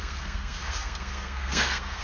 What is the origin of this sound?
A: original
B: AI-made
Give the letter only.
B